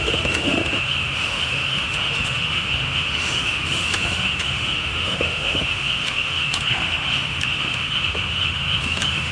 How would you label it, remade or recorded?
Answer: remade